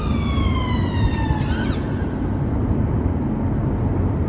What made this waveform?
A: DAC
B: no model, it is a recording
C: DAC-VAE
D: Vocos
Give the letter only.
B